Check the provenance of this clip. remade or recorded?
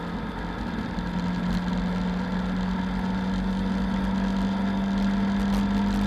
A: recorded